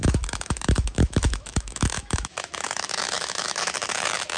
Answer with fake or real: fake